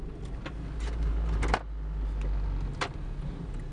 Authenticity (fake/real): real